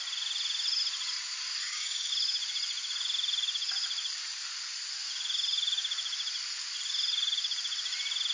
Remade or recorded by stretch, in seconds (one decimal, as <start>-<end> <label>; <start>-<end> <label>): 0.0-1.6 recorded; 1.6-2.1 remade; 2.1-8.3 recorded